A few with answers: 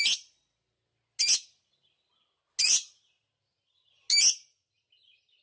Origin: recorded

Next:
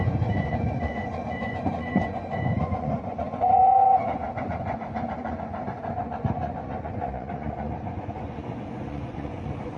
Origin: remade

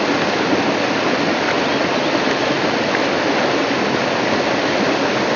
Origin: recorded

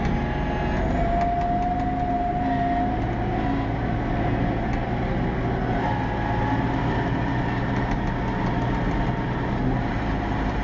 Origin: recorded